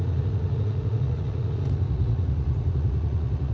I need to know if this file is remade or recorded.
remade